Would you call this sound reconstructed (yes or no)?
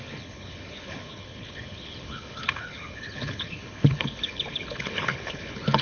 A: yes